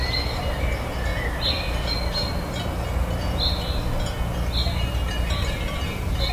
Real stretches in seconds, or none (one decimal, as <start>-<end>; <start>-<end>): 1.1-4.9